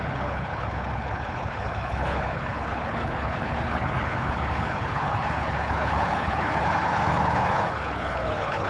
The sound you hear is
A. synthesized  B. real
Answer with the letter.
A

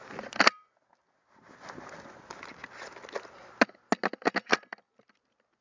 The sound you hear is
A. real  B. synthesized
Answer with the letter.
A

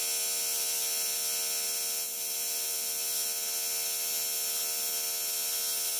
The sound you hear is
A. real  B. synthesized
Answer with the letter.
A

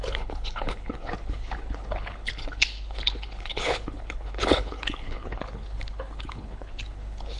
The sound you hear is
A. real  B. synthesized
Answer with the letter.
B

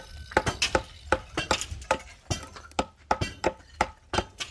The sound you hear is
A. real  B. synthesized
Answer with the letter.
A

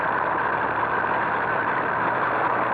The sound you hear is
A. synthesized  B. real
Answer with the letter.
B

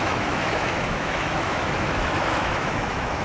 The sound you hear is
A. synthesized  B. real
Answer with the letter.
A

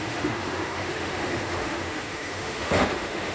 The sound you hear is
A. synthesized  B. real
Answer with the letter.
A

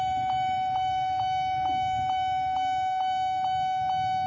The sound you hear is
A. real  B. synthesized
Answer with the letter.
A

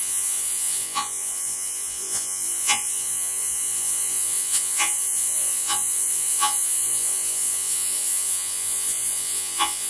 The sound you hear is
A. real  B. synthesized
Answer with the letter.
B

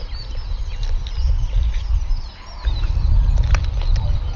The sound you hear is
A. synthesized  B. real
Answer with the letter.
B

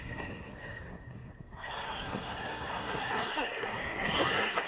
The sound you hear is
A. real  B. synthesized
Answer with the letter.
B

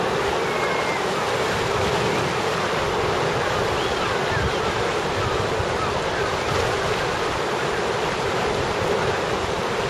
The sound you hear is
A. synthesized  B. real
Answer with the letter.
B